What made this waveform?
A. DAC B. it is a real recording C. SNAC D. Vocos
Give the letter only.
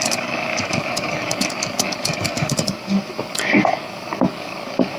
A